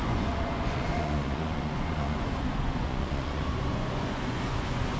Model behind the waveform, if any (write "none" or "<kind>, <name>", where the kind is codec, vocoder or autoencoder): vocoder, Vocos